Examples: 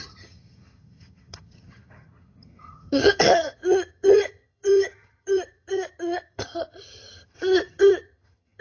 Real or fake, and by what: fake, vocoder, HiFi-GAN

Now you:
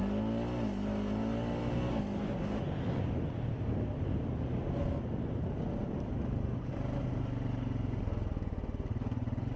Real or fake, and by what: real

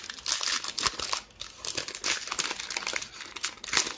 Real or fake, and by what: real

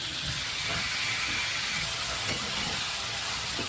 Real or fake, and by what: fake, vocoder, HiFi-GAN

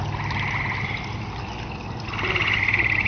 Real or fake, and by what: real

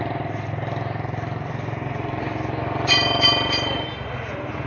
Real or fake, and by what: real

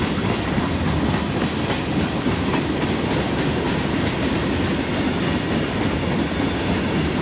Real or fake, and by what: real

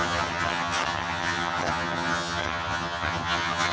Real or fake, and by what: fake, vocoder, HiFi-GAN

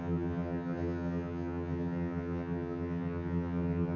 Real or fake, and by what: fake, vocoder, HiFi-GAN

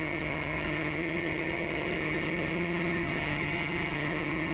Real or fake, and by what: fake, vocoder, HiFi-GAN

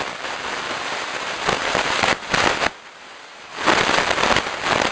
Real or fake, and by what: real